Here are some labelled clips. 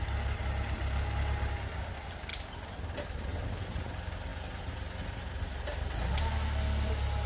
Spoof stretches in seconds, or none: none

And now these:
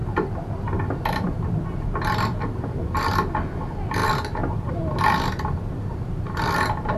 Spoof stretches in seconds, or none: none

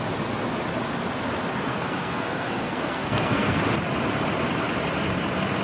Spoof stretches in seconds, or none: 1.7-3.6 (codec, SNAC)

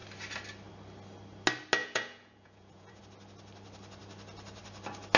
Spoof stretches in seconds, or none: 1.8-3.0 (vocoder, Vocos)